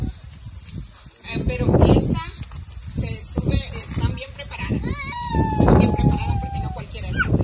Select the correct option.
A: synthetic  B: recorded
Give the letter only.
B